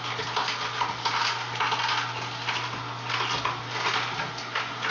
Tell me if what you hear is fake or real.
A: real